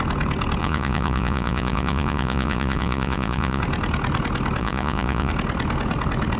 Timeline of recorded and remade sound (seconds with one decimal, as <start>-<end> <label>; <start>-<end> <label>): 0.0-0.6 recorded; 0.6-3.6 remade; 3.6-4.6 recorded; 4.6-5.3 remade; 5.3-6.4 recorded